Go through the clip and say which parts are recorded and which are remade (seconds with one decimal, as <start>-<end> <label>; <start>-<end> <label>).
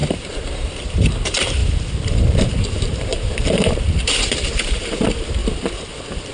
0.0-5.4 remade; 5.4-6.3 recorded